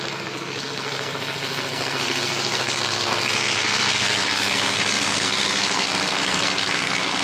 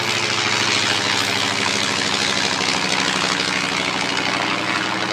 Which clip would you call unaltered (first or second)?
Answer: second